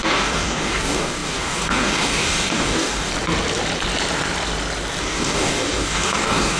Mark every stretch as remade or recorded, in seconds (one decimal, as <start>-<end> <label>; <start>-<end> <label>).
0.0-3.1 remade; 3.1-5.0 recorded; 5.0-6.6 remade